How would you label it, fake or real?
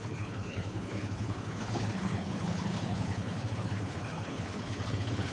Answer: fake